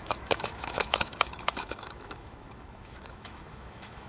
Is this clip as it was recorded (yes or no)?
no